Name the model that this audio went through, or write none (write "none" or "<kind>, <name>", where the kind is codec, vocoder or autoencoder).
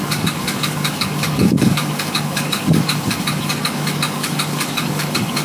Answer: codec, DAC